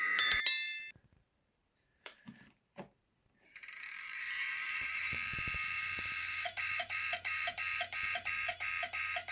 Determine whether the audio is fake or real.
fake